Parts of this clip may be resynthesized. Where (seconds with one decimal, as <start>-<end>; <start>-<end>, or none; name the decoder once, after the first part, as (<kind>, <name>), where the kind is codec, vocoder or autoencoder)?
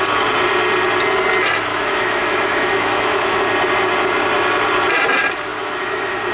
1.7-3.4 (autoencoder, DAC-VAE); 5.5-6.3